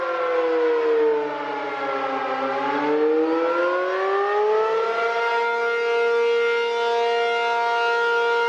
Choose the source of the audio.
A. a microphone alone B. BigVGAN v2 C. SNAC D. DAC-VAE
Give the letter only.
A